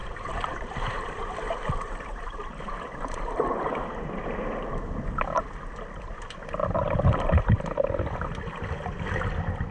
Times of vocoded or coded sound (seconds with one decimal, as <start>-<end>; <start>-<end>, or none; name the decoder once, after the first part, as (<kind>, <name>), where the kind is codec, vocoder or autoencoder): 0.0-4.1 (vocoder, BigVGAN v2)